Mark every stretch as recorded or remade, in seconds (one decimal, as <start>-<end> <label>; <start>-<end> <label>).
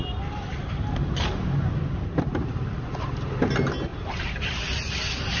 0.0-0.6 recorded; 0.6-3.3 remade; 3.3-3.9 recorded; 3.9-4.5 remade; 4.5-5.4 recorded